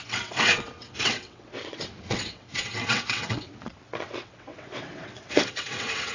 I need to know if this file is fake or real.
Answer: fake